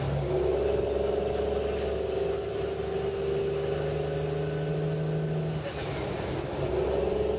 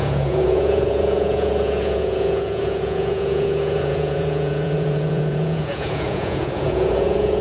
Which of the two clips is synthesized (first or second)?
second